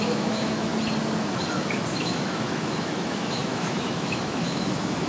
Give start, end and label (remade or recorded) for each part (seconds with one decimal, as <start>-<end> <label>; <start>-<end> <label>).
0.0-0.7 remade; 0.7-1.9 recorded; 1.9-5.1 remade